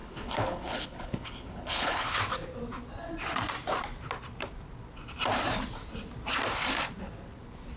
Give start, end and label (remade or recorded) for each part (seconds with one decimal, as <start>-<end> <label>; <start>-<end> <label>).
0.0-2.2 remade; 2.2-7.8 recorded